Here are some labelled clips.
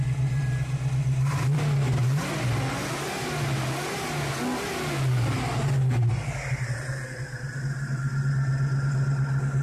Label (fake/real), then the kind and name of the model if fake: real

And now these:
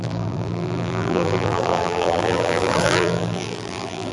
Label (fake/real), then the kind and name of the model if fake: fake, vocoder, BigVGAN v2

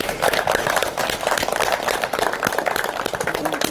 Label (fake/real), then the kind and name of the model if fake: fake, vocoder, BigVGAN v2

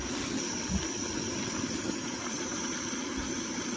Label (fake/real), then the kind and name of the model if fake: real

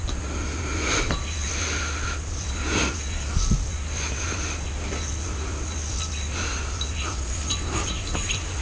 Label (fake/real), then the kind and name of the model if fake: real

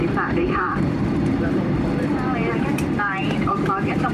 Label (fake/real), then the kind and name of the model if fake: fake, vocoder, BigVGAN v2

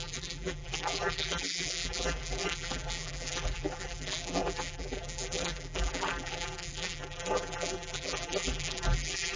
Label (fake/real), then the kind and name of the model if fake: fake, vocoder, BigVGAN v2